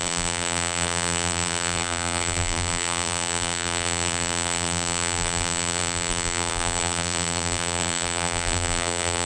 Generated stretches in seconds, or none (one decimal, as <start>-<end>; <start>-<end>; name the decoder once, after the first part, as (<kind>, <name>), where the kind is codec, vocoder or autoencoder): 0.0-9.2 (vocoder, BigVGAN v2)

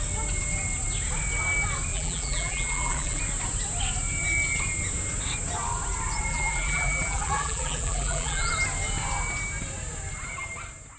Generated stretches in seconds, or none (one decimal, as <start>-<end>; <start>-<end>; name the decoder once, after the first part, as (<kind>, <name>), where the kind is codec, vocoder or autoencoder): 1.9-3.2 (vocoder, BigVGAN v2); 6.3-8.5

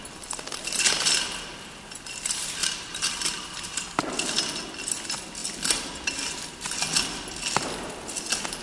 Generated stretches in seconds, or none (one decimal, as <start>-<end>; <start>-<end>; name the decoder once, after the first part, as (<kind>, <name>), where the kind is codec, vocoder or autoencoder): 2.6-3.8 (vocoder, BigVGAN v2)

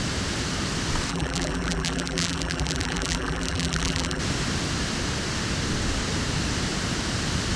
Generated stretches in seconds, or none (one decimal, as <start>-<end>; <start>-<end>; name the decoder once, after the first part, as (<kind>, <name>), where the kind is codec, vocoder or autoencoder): 1.1-4.2 (vocoder, BigVGAN v2)

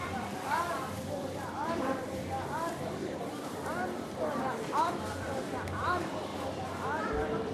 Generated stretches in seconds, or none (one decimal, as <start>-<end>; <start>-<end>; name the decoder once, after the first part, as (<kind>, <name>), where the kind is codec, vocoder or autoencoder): 0.0-6.3 (vocoder, BigVGAN v2); 7.1-7.5